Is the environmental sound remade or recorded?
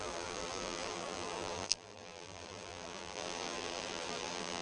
remade